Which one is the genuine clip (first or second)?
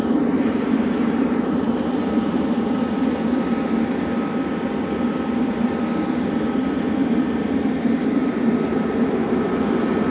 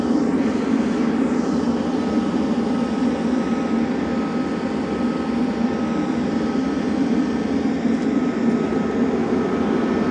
second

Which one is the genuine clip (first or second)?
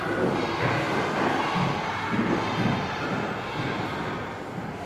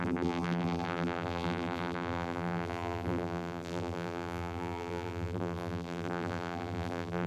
first